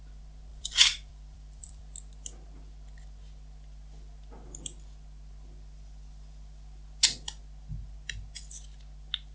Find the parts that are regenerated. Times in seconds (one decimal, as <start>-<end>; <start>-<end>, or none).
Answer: 0.5-1.8